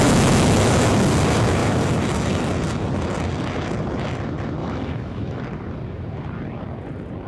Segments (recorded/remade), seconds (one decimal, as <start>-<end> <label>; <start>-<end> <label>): 0.0-0.9 remade; 0.9-4.6 recorded; 4.6-5.4 remade; 5.4-7.3 recorded